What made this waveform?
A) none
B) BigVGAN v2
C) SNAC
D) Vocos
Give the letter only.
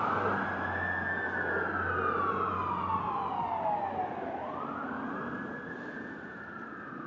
A